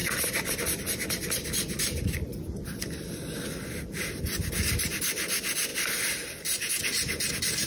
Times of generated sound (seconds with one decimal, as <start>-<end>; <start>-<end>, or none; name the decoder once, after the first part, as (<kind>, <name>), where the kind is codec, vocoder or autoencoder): 0.0-4.2 (vocoder, BigVGAN v2); 5.7-6.7